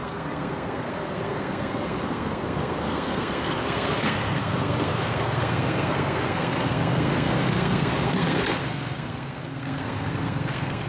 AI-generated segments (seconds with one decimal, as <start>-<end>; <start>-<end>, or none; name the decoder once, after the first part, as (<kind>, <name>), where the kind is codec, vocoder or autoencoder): 0.0-10.9 (codec, SNAC)

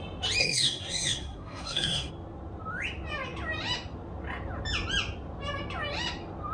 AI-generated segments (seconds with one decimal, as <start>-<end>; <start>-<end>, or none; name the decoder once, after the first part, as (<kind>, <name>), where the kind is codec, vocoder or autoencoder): 0.4-2.1 (codec, SNAC)